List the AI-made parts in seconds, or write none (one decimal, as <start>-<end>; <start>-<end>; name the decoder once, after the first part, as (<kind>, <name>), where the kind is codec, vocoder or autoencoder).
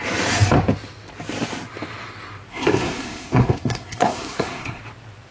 2.5-4.8 (codec, SNAC)